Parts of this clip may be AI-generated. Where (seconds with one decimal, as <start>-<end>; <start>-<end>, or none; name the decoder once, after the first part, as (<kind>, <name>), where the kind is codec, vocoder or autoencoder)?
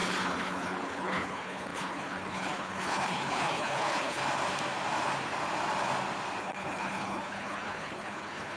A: 0.0-4.2 (codec, HILCodec); 6.4-8.6